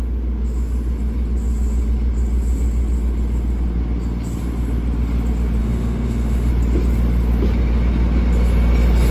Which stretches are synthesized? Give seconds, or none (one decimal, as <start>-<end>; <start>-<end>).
5.6-6.5

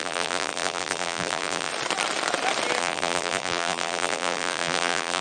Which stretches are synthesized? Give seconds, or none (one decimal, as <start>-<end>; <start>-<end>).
0.0-1.7; 2.8-5.2

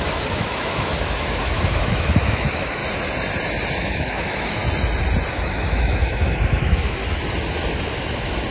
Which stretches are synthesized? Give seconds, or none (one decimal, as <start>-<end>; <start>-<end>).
0.0-2.8; 3.8-4.6; 5.3-7.0; 7.8-8.5

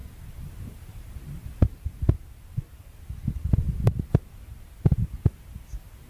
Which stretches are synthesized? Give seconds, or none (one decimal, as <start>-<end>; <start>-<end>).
none